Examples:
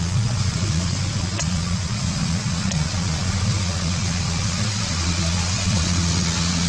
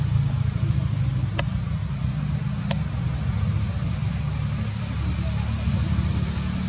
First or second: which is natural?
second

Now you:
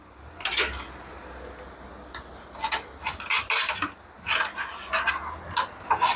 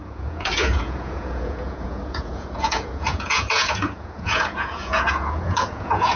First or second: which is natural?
first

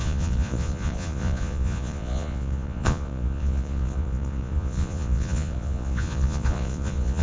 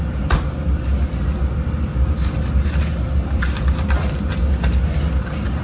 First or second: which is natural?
second